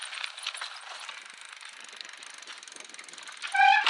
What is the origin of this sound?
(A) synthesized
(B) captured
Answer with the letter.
B